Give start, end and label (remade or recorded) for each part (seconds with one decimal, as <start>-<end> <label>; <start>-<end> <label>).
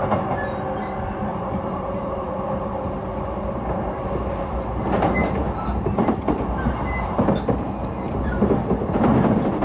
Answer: 0.0-1.3 recorded; 1.3-3.1 remade; 3.1-5.2 recorded; 5.2-6.5 remade; 6.5-7.8 recorded; 7.8-8.5 remade; 8.5-9.6 recorded